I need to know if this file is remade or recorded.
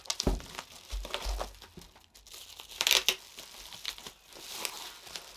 recorded